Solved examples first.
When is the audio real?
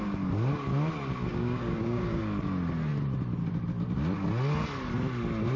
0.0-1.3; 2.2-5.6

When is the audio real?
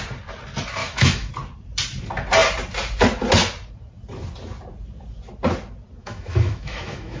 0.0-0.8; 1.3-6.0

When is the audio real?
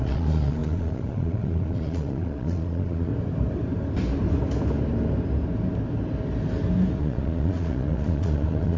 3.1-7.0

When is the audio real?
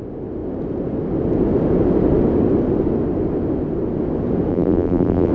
0.0-4.5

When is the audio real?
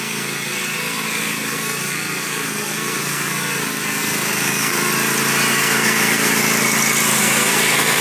4.9-5.5; 6.4-7.2